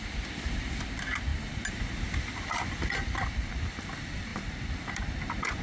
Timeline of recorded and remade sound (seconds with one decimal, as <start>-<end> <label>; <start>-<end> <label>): 0.0-1.3 remade; 1.3-2.0 recorded; 2.0-5.6 remade